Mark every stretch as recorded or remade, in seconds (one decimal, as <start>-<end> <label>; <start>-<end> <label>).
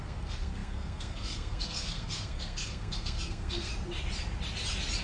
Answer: 0.0-3.7 remade; 3.7-5.0 recorded